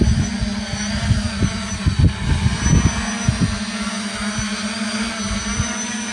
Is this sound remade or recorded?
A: recorded